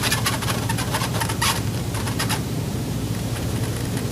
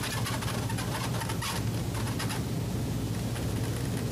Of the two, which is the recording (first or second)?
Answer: second